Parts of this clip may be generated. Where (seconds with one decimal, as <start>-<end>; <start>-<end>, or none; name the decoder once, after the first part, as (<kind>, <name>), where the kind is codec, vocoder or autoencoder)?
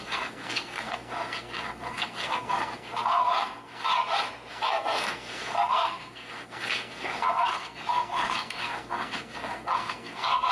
0.0-3.9 (codec, SNAC); 4.5-10.5